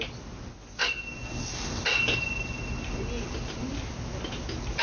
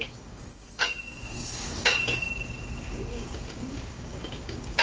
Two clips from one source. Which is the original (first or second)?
first